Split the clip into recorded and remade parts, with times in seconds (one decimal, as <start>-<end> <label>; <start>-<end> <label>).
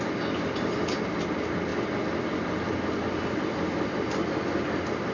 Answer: 0.0-5.1 recorded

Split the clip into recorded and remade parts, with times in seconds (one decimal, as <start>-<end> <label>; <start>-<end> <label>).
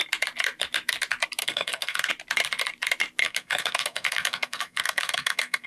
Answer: 0.0-1.4 recorded; 1.4-2.1 remade; 2.1-3.2 recorded; 3.2-5.7 remade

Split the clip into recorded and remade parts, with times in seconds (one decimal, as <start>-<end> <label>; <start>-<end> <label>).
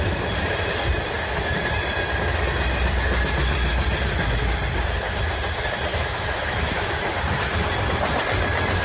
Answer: 0.0-5.9 recorded; 5.9-7.2 remade; 7.2-8.8 recorded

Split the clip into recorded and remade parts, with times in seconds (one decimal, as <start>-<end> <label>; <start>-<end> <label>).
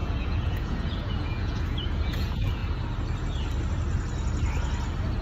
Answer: 0.0-2.6 remade; 2.6-5.2 recorded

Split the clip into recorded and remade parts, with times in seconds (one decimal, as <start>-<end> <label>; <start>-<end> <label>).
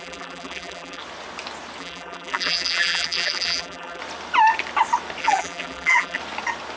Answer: 0.0-1.0 remade; 1.0-1.8 recorded; 1.8-4.0 remade; 4.0-5.2 recorded; 5.2-6.2 remade; 6.2-6.8 recorded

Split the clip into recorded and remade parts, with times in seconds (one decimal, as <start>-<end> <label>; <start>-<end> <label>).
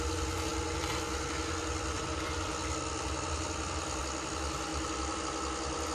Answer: 0.0-0.5 recorded; 0.5-4.0 remade; 4.0-4.7 recorded; 4.7-5.2 remade; 5.2-5.9 recorded